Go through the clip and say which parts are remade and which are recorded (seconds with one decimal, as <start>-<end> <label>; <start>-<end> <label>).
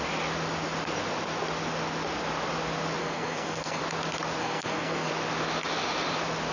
0.0-3.0 recorded; 3.0-3.8 remade; 3.8-4.4 recorded; 4.4-5.1 remade; 5.1-6.5 recorded